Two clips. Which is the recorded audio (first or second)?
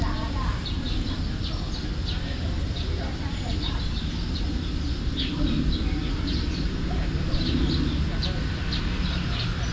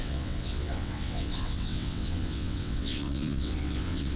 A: first